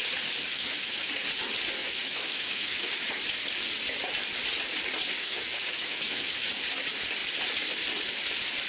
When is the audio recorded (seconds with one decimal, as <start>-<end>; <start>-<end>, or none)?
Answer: 0.0-0.4; 1.1-1.8; 2.9-5.2; 6.5-8.7